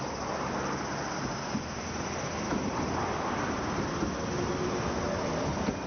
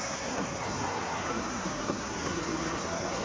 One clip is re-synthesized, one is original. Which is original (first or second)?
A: first